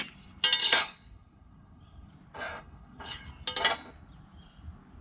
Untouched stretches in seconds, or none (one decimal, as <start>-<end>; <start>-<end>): 0.0-0.6; 2.1-2.5; 3.3-5.0